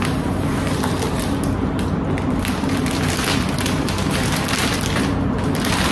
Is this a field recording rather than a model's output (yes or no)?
yes